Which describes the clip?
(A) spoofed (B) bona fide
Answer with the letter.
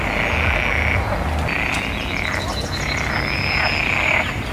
B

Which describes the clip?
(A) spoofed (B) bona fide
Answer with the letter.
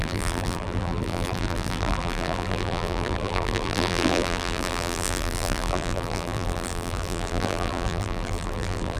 A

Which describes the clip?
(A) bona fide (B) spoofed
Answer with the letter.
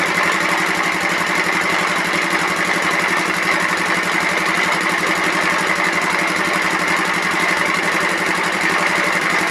B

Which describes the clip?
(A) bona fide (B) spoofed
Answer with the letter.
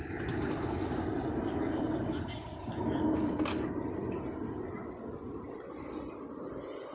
A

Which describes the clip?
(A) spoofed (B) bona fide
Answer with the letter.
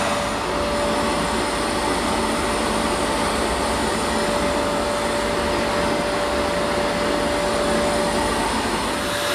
B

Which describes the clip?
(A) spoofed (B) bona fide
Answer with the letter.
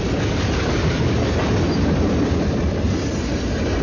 B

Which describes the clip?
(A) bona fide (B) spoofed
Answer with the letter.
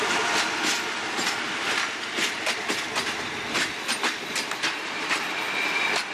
A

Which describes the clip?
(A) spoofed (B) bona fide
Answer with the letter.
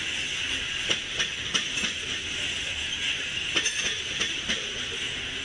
B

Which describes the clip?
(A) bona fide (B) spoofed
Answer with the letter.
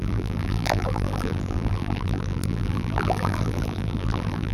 B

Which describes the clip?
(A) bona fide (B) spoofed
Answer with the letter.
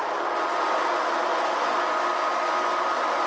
A